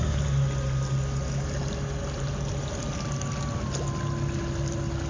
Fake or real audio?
real